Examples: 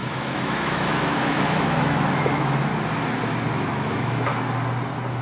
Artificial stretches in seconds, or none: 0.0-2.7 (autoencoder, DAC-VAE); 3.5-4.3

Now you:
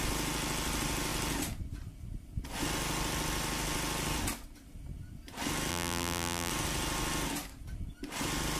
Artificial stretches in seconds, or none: 5.7-6.5 (vocoder, BigVGAN v2)

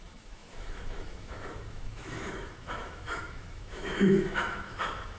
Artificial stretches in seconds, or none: 0.0-5.2 (autoencoder, DAC-VAE)

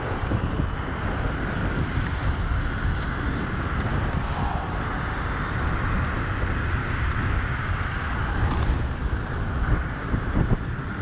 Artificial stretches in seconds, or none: 6.8-7.7 (codec, DAC)

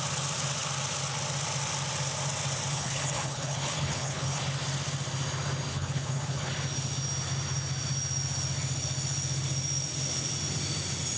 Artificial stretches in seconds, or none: 2.7-4.4 (codec, HILCodec); 5.7-6.5

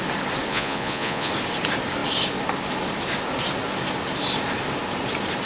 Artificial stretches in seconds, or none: 0.5-1.3 (vocoder, Vocos)

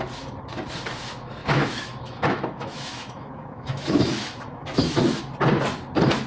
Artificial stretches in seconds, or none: 1.4-5.2 (autoencoder, DAC-VAE)

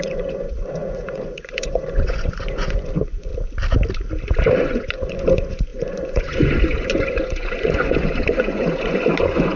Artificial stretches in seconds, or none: 0.0-3.3 (vocoder, Vocos); 4.5-9.6